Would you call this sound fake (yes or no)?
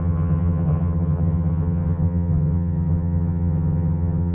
yes